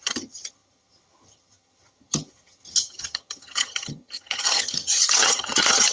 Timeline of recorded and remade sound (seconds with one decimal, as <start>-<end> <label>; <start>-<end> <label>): 0.0-5.9 remade